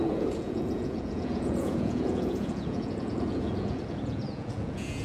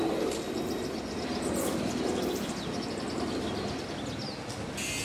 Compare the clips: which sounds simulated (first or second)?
first